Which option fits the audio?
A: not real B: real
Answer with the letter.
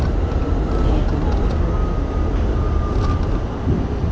B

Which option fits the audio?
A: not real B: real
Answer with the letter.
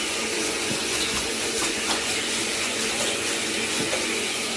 A